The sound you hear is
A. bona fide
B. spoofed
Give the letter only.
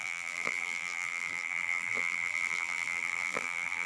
B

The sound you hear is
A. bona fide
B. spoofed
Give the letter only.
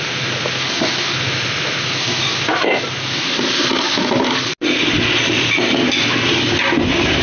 A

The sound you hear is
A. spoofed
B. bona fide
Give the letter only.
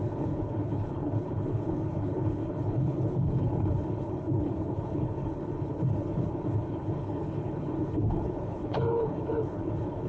A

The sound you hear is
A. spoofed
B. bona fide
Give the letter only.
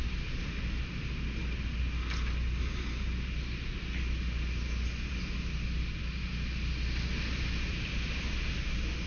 B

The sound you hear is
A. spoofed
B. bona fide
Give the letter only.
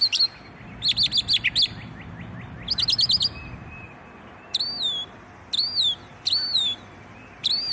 B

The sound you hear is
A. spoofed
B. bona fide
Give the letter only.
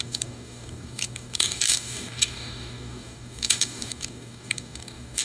A